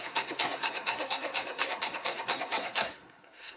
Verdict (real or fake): fake